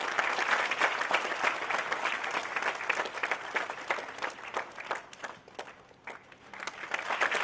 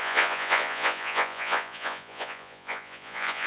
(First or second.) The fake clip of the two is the second